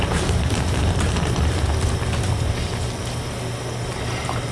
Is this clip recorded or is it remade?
recorded